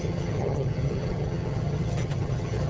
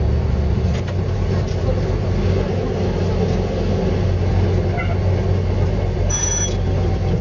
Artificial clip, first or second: first